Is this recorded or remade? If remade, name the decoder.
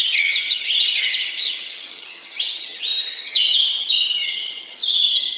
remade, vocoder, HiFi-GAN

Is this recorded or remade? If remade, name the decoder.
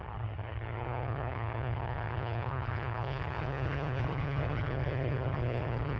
remade, vocoder, HiFi-GAN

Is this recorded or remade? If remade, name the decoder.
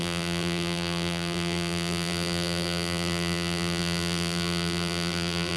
remade, vocoder, BigVGAN v2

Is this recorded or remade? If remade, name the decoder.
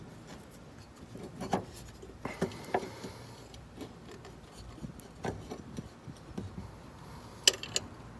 recorded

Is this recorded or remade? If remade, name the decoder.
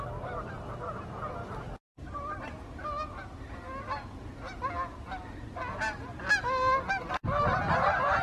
recorded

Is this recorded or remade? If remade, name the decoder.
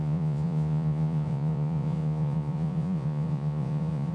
remade, vocoder, Vocos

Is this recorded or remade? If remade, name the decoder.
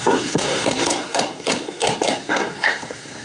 remade, codec, SNAC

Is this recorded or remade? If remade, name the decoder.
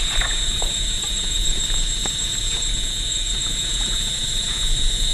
remade, vocoder, Vocos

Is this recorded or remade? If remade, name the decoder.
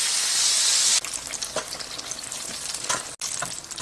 recorded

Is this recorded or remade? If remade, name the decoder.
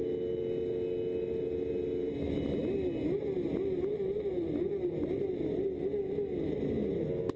recorded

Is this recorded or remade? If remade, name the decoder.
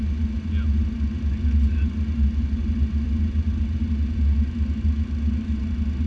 recorded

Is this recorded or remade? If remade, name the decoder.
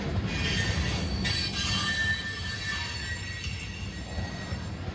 recorded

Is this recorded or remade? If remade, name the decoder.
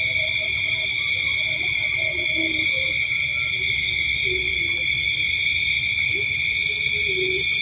recorded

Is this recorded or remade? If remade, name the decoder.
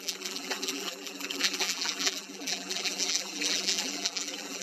remade, vocoder, BigVGAN v2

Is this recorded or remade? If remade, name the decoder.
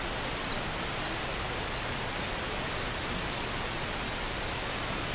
recorded